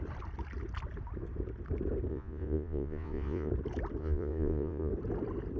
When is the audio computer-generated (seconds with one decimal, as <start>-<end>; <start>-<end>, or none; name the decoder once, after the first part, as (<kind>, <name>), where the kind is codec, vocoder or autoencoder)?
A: 2.1-3.5 (vocoder, Vocos); 4.0-4.9